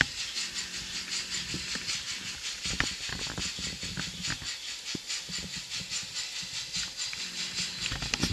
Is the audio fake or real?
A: real